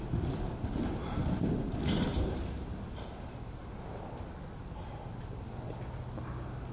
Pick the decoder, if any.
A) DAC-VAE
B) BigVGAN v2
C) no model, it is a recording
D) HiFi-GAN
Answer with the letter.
C